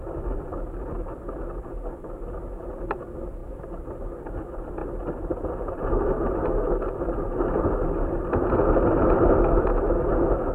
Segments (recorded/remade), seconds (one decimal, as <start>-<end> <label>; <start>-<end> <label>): 0.0-10.5 recorded